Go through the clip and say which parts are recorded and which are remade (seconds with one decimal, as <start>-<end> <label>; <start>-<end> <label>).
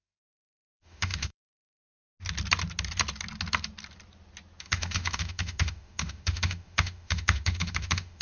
0.0-1.8 remade; 1.8-4.6 recorded; 4.6-8.2 remade